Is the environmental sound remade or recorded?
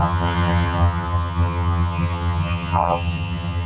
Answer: remade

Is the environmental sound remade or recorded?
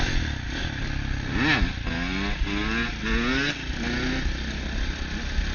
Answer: recorded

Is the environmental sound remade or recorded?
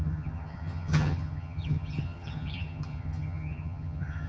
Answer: remade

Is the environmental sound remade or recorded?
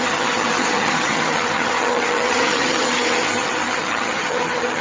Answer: remade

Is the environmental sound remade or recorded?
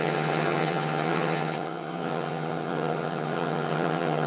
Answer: remade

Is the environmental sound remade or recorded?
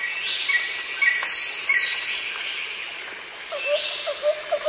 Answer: recorded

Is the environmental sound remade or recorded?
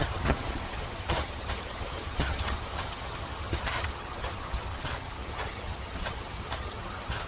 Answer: remade